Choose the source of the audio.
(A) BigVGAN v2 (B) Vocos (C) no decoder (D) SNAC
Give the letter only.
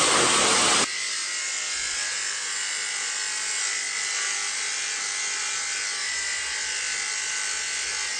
C